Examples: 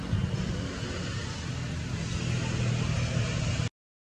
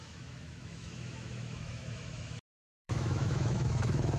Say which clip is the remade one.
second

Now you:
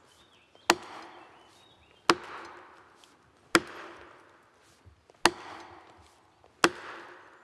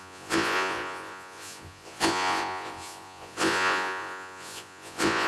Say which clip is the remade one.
second